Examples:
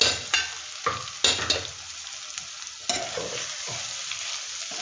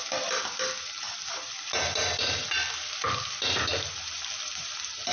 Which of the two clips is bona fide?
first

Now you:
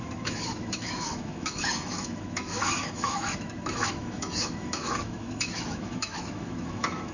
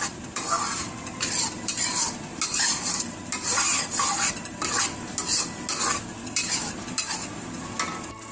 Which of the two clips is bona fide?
second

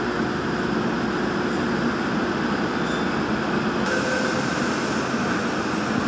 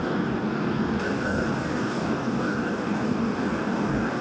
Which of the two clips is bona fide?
first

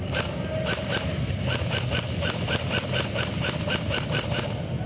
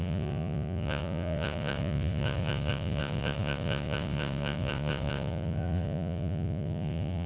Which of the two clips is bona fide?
first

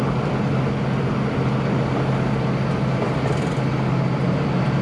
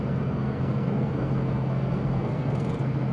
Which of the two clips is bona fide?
first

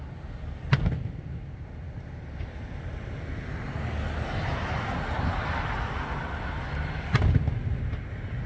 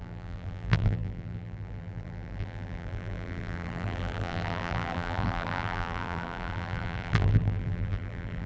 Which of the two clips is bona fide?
first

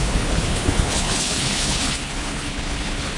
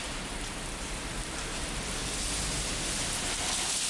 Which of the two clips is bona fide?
second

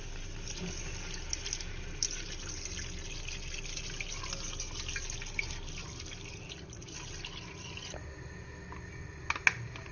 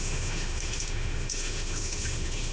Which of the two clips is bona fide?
first